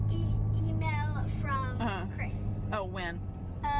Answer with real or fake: real